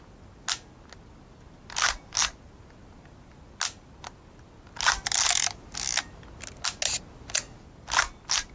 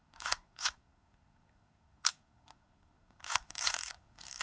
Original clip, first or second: first